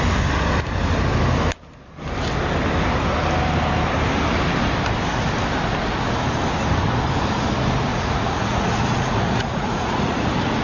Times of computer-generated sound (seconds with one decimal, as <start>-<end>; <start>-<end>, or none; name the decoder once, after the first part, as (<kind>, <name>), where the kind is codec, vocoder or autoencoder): 7.9-10.6 (vocoder, Vocos)